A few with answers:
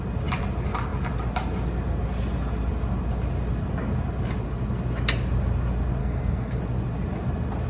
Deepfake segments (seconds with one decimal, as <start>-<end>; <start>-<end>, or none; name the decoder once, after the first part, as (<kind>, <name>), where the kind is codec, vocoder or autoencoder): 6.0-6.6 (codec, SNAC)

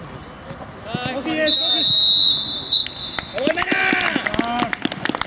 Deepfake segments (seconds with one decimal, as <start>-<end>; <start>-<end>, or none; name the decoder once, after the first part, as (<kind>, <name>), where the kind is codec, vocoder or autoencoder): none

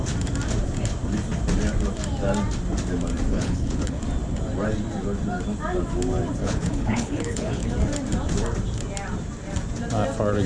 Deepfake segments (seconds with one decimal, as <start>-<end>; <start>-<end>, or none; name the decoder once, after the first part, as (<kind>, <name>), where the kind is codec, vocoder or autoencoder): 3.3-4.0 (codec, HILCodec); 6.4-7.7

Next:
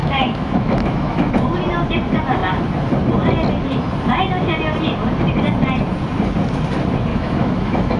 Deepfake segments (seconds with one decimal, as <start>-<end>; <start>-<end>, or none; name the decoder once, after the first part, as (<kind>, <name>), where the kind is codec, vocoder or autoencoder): 0.0-1.3 (autoencoder, DAC-VAE); 7.1-8.0

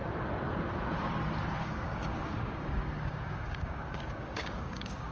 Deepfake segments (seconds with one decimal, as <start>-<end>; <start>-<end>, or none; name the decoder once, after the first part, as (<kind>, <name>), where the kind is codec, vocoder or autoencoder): 1.6-5.1 (codec, DAC)

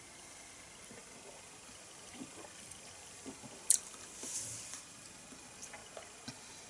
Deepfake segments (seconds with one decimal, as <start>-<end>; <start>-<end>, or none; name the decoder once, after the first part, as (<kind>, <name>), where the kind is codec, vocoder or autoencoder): none

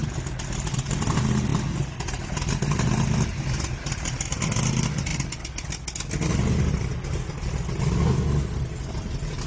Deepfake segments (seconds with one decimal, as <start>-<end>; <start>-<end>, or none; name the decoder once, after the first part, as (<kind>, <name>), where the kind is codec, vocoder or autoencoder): none

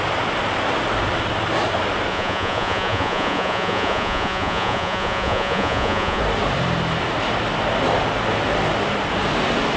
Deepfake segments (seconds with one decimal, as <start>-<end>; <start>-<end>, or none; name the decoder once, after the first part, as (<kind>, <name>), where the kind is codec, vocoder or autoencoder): 2.1-6.2 (vocoder, Vocos)